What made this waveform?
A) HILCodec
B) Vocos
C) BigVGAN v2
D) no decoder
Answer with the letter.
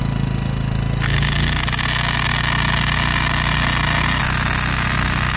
D